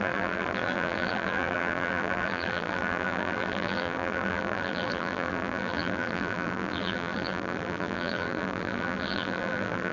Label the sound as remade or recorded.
remade